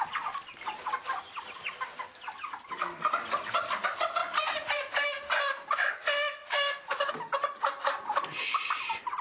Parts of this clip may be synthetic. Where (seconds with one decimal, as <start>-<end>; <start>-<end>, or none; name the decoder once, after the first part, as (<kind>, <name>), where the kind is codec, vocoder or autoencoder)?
6.4-7.1 (codec, SNAC)